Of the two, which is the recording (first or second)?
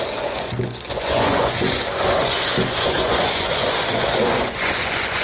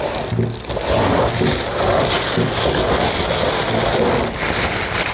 second